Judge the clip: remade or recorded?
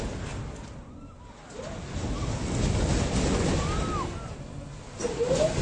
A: recorded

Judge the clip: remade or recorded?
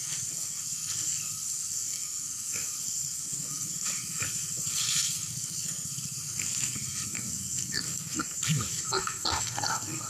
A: remade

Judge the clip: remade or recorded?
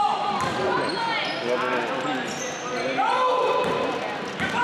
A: recorded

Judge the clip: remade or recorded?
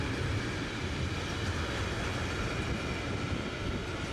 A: recorded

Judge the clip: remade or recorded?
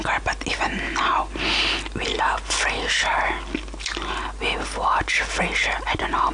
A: recorded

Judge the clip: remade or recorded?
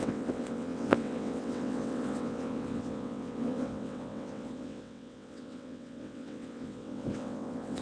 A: remade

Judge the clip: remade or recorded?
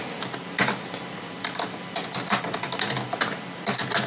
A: recorded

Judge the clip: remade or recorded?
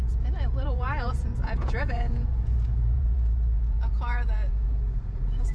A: remade